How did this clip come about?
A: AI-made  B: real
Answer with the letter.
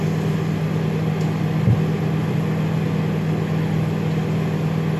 B